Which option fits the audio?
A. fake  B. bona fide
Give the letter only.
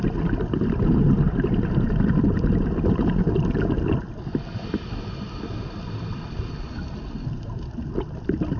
B